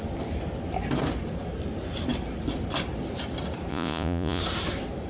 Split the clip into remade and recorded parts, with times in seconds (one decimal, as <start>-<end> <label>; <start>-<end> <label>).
0.0-3.7 recorded; 3.7-4.4 remade; 4.4-5.1 recorded